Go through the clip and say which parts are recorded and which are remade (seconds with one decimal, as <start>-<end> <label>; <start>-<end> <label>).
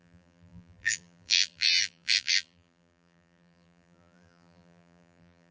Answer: 0.0-5.5 remade